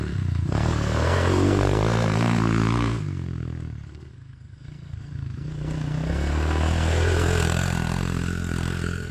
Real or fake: fake